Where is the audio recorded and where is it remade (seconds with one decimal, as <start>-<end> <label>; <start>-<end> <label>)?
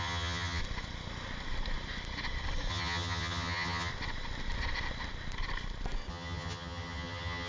0.0-0.6 remade; 0.6-2.7 recorded; 2.7-3.9 remade; 3.9-6.1 recorded; 6.1-7.5 remade